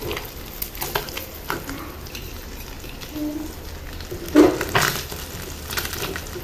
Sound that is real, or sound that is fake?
real